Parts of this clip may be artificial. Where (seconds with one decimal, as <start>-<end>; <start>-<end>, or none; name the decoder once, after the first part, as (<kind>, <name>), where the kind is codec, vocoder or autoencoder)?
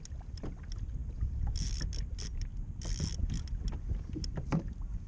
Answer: none